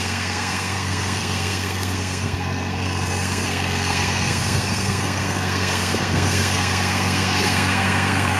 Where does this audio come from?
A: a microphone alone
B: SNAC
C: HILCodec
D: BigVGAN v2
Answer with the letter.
B